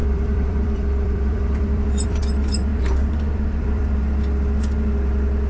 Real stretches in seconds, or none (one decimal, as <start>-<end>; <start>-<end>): 2.2-2.7; 4.0-5.5